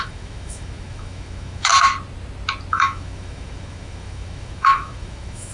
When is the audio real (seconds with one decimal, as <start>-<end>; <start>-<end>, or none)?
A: 1.7-2.7